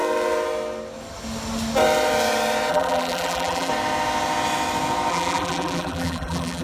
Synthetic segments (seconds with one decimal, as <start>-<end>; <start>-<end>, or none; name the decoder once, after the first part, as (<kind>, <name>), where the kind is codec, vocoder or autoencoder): 2.7-3.7 (vocoder, BigVGAN v2); 5.1-6.6